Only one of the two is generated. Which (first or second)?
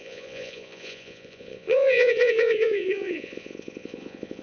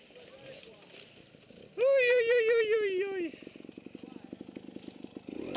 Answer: first